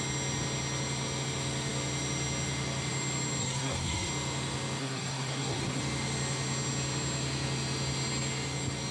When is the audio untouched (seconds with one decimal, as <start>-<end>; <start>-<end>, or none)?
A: 0.0-3.4; 4.1-4.8; 5.8-8.9